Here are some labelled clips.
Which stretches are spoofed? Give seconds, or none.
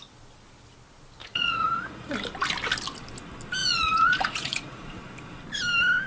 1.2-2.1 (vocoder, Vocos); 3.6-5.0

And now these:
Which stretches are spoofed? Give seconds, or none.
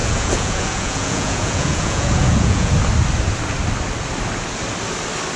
0.0-2.7 (vocoder, Vocos)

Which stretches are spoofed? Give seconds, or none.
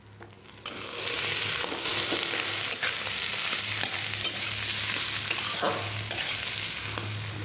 none